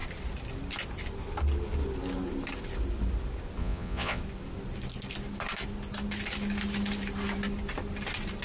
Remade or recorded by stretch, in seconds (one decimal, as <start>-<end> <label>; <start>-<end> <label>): 0.0-3.6 recorded; 3.6-4.2 remade; 4.2-8.4 recorded

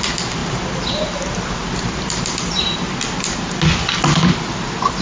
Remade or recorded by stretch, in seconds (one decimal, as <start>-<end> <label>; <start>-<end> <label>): 0.0-5.0 recorded

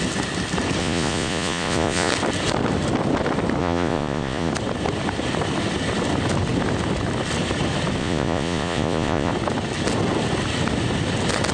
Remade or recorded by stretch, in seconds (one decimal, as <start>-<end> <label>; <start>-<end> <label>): 0.0-0.8 recorded; 0.8-2.1 remade; 2.1-3.6 recorded; 3.6-4.5 remade; 4.5-8.0 recorded; 8.0-9.3 remade; 9.3-11.5 recorded

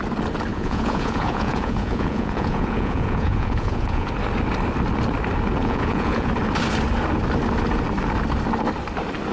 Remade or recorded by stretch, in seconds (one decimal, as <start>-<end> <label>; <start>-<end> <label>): 0.0-0.5 recorded; 0.5-4.1 remade; 4.1-5.6 recorded; 5.6-6.3 remade; 6.3-9.3 recorded

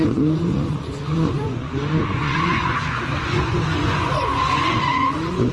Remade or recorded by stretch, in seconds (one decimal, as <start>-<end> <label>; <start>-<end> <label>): 0.0-5.5 remade